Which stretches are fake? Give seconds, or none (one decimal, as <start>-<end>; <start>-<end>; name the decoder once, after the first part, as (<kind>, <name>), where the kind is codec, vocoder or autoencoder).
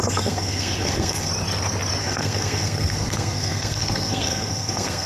0.0-1.3 (codec, SNAC); 2.0-5.1